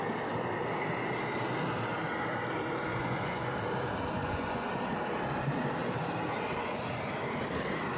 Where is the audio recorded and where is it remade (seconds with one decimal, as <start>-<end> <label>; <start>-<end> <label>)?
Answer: 0.0-2.9 recorded; 2.9-3.5 remade; 3.5-4.2 recorded; 4.2-4.7 remade; 4.7-8.0 recorded